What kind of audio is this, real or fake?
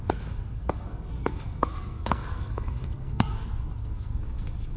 fake